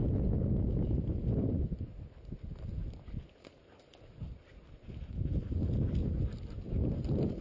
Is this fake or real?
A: real